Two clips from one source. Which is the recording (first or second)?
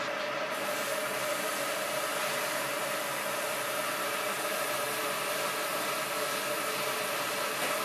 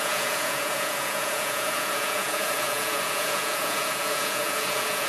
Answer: first